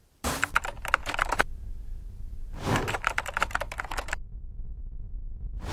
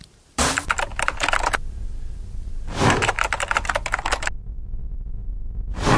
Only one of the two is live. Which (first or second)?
second